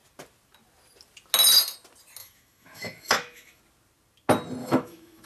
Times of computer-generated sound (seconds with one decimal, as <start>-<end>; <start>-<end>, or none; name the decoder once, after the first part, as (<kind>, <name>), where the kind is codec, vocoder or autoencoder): 2.2-3.6 (autoencoder, DAC-VAE); 4.6-5.3